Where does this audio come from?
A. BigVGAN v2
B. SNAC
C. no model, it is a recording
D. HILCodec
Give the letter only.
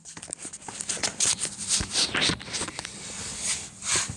A